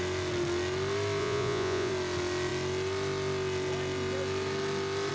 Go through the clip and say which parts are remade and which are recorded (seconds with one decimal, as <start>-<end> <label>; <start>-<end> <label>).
0.0-1.2 recorded; 1.2-1.9 remade; 1.9-5.1 recorded